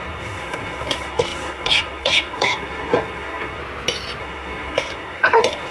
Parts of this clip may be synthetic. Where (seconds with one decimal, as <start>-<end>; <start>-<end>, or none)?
0.0-3.6; 4.2-5.7